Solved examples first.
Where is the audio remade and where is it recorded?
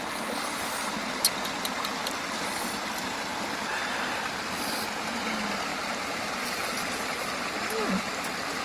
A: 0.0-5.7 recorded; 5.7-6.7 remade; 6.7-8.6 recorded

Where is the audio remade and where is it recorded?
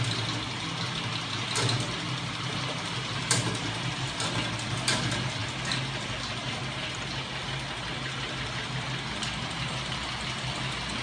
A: 0.0-11.0 recorded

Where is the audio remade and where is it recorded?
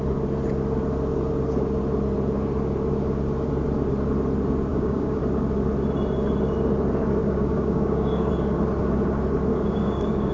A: 0.0-4.7 recorded; 4.7-5.2 remade; 5.2-7.2 recorded; 7.2-8.3 remade; 8.3-9.5 recorded; 9.5-10.3 remade